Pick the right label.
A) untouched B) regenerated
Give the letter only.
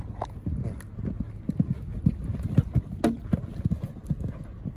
A